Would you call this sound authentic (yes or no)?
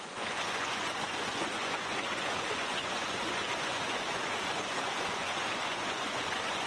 no